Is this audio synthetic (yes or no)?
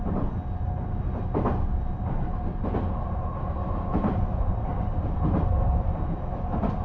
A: no